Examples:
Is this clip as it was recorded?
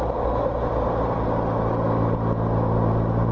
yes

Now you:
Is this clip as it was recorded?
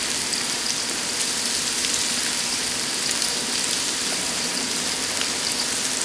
yes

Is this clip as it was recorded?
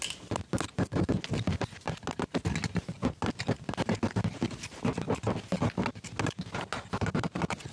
yes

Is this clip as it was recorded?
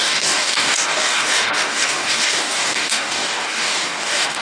no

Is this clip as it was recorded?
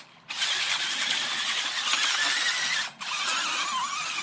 yes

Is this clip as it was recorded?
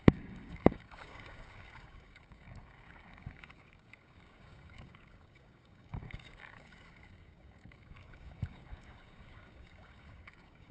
no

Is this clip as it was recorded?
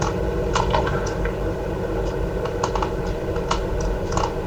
yes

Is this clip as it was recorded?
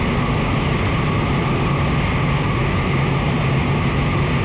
yes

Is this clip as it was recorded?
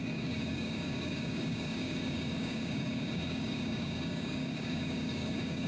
no